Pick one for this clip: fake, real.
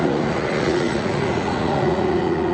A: fake